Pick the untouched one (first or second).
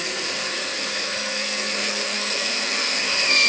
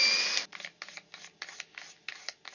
second